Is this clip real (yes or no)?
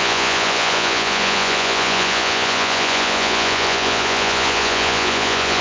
no